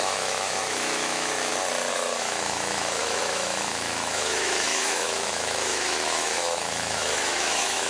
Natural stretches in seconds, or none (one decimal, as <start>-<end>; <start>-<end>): 1.5-2.2